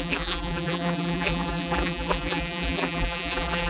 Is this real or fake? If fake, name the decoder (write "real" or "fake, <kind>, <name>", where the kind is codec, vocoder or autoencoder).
fake, vocoder, BigVGAN v2